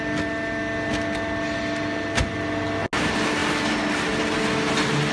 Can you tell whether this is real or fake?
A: real